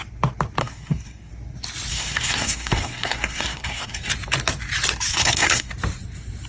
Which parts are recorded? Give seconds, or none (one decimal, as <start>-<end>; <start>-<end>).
0.0-0.6; 1.3-1.9; 4.1-5.1; 5.7-6.5